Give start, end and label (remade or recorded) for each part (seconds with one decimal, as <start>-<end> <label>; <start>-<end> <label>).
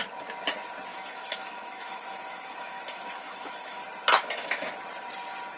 0.0-0.9 recorded; 0.9-3.8 remade; 3.8-4.2 recorded; 4.2-4.7 remade; 4.7-5.6 recorded